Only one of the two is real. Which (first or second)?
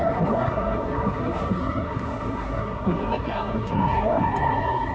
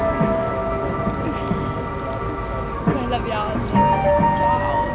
second